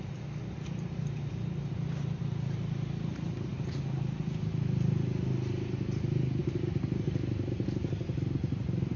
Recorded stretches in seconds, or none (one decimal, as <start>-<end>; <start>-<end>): 0.0-9.0